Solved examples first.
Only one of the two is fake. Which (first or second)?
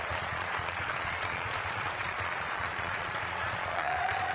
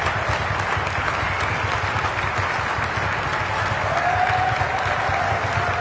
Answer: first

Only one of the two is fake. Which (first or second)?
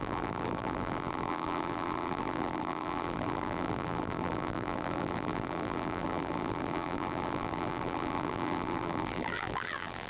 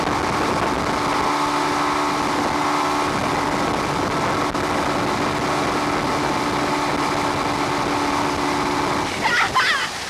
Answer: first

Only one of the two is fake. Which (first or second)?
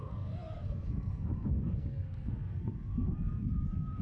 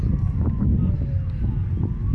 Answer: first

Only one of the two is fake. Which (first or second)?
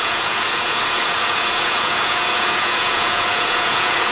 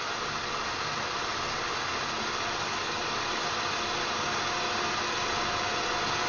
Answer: first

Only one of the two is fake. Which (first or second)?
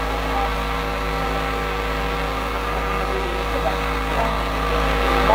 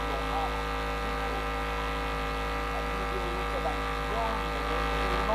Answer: first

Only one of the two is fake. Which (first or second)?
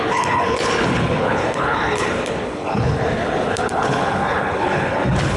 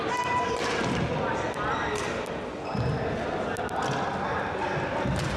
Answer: first